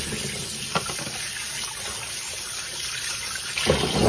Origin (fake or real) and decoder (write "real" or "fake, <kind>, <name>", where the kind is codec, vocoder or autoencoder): real